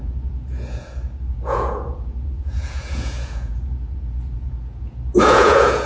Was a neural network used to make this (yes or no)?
yes